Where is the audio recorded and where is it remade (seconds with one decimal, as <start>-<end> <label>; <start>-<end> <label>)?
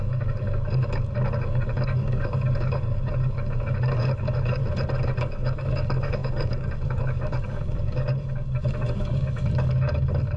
0.0-4.6 remade; 4.6-5.2 recorded; 5.2-10.4 remade